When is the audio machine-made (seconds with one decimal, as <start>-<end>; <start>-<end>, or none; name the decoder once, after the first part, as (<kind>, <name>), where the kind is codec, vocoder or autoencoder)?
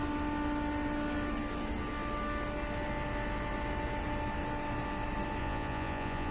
5.4-6.3 (vocoder, Vocos)